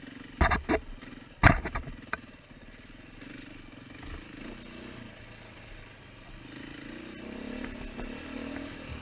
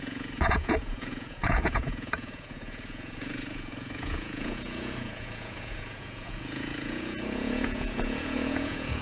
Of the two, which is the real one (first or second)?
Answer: first